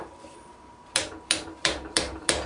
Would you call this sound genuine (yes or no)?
no